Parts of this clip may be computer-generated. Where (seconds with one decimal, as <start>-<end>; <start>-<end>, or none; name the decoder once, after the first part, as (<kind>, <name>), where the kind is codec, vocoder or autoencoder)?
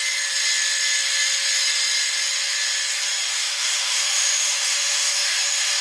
3.2-5.8 (autoencoder, DAC-VAE)